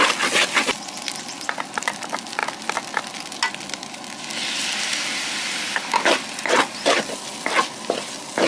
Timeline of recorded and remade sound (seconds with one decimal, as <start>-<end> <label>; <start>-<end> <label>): 0.0-8.5 recorded